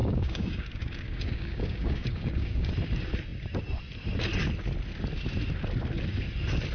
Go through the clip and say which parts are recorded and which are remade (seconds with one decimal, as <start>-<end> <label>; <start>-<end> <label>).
0.0-2.7 remade; 2.7-6.7 recorded